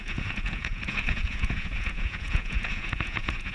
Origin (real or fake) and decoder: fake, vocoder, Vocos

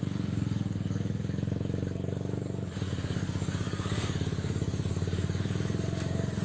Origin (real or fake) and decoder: fake, codec, DAC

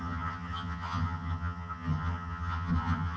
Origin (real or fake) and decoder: fake, vocoder, HiFi-GAN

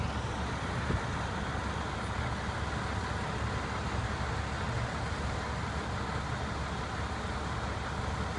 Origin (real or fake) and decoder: real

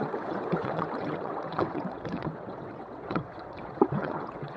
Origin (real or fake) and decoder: fake, vocoder, WaveNeXt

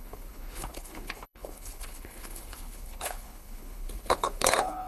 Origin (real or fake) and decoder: fake, codec, HILCodec